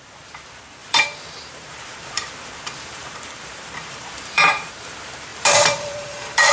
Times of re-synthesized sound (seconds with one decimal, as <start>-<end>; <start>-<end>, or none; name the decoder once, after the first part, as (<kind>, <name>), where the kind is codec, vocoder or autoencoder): 0.8-4.7 (vocoder, BigVGAN v2); 5.3-6.5